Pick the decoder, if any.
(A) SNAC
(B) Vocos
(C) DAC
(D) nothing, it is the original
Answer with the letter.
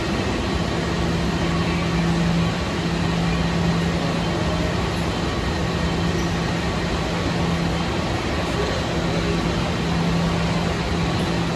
D